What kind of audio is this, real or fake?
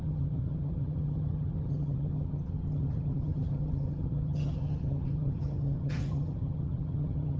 fake